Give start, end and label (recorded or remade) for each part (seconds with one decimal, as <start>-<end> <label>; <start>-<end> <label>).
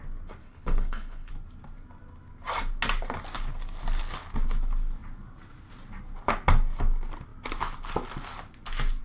0.0-0.4 recorded; 0.4-1.3 remade; 1.3-9.0 recorded